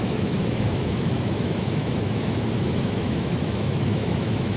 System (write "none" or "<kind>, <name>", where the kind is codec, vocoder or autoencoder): autoencoder, DAC-VAE